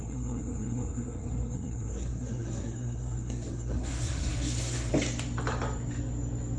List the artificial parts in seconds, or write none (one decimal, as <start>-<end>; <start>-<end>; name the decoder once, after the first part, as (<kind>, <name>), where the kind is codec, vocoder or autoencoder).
0.0-4.9 (codec, SNAC)